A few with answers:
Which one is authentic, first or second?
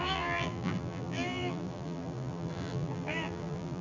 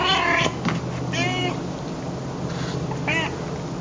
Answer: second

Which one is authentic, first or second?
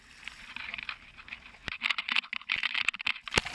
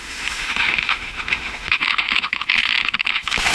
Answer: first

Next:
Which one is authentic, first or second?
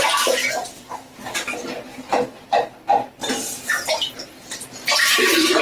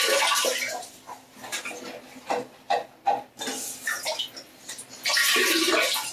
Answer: second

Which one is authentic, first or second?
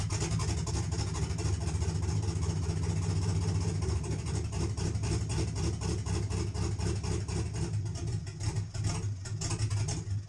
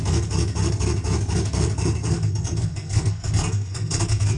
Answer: first